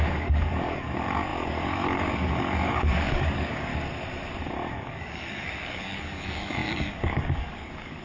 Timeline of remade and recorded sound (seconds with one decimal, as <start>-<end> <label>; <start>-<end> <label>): 0.0-3.7 remade; 3.7-4.7 recorded; 4.7-8.0 remade